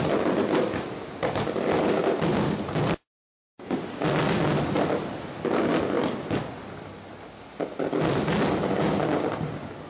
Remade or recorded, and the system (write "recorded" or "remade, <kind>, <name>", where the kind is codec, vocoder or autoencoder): recorded